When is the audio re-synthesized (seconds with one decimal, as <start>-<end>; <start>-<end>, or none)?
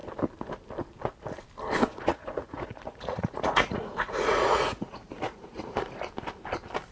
1.9-6.0